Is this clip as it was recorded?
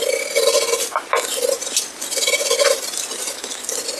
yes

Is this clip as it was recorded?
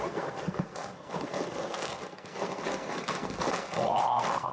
no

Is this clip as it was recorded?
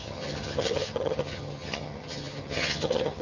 no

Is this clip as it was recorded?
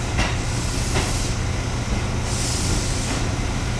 yes